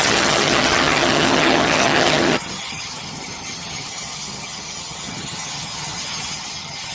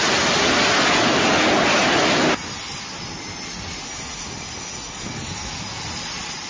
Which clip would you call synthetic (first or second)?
first